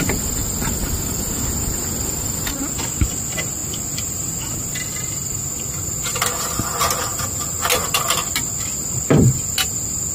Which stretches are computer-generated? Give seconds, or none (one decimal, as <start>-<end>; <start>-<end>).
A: 0.8-1.3